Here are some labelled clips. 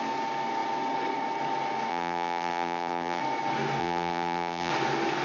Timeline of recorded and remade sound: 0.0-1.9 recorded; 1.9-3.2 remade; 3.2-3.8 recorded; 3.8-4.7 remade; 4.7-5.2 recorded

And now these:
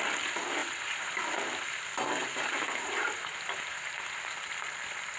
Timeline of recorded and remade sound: 0.0-0.6 recorded; 0.6-1.2 remade; 1.2-2.2 recorded; 2.2-4.5 remade; 4.5-5.2 recorded

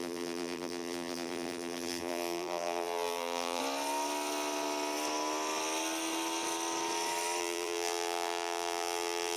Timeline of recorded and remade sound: 0.0-3.6 remade; 3.6-7.4 recorded; 7.4-9.4 remade

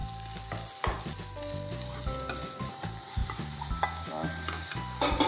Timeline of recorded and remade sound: 0.0-3.2 recorded; 3.2-3.7 remade; 3.7-5.3 recorded

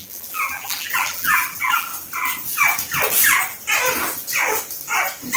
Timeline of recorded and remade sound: 0.0-1.9 remade; 1.9-5.4 recorded

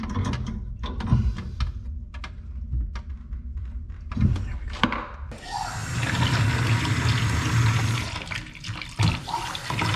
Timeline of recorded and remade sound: 0.0-3.1 recorded; 3.1-3.7 remade; 3.7-5.8 recorded; 5.8-6.4 remade; 6.4-10.0 recorded

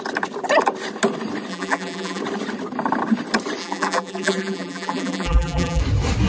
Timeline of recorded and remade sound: 0.0-1.5 recorded; 1.5-2.2 remade; 2.2-3.6 recorded; 3.6-5.8 remade; 5.8-6.3 recorded